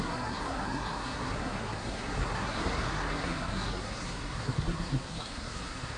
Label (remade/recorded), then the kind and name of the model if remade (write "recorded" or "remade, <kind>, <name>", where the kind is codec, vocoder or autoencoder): remade, codec, SNAC